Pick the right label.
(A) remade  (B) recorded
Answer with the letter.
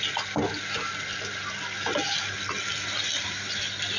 B